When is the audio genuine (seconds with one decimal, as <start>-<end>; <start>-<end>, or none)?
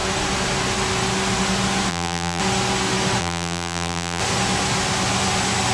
0.0-1.9; 2.4-3.2; 4.2-5.7